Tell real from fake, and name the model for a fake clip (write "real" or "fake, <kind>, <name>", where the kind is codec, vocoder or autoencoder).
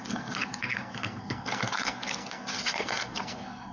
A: fake, codec, SNAC